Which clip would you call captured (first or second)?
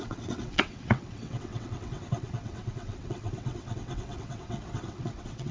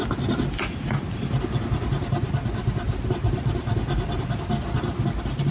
second